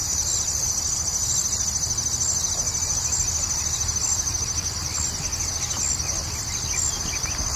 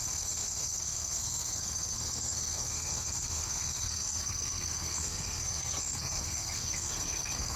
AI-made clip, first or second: second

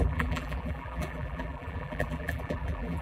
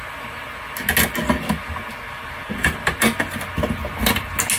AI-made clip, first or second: first